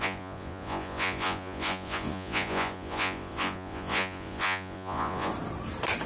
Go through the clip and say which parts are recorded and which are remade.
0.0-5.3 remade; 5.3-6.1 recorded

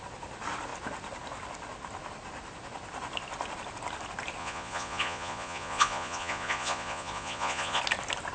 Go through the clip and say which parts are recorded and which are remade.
0.0-4.4 recorded; 4.4-7.8 remade; 7.8-8.3 recorded

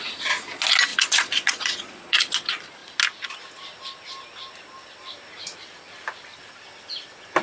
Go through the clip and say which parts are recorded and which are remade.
0.0-0.9 recorded; 0.9-2.2 remade; 2.2-7.4 recorded

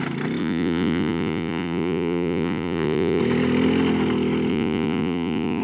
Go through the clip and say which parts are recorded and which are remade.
0.0-0.4 recorded; 0.4-3.2 remade; 3.2-4.5 recorded; 4.5-5.6 remade

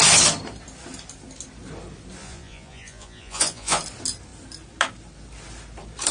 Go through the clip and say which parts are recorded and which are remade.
0.0-2.2 recorded; 2.2-3.8 remade; 3.8-6.1 recorded

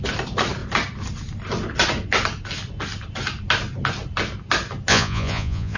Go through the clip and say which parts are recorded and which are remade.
0.0-4.9 recorded; 4.9-5.8 remade

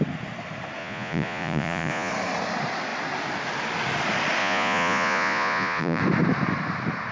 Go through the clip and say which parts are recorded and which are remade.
0.0-0.8 recorded; 0.8-2.1 remade; 2.1-4.4 recorded; 4.4-6.0 remade; 6.0-7.1 recorded